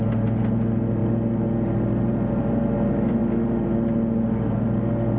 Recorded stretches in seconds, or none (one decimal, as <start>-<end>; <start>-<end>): 0.0-5.2